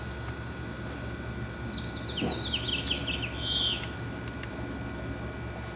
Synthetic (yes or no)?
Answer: no